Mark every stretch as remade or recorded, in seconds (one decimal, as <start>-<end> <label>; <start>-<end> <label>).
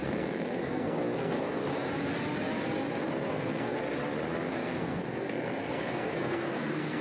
0.0-1.6 remade; 1.6-3.3 recorded; 3.3-3.8 remade; 3.8-4.5 recorded; 4.5-7.0 remade